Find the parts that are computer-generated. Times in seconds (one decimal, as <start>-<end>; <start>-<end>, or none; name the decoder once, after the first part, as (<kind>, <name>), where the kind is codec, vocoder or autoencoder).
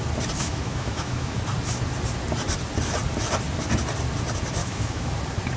0.4-1.4 (autoencoder, DAC-VAE); 4.6-5.1